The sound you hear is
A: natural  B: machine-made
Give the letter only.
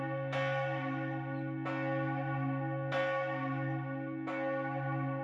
A